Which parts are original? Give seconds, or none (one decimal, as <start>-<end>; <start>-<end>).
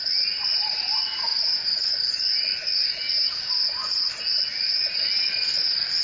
0.0-6.0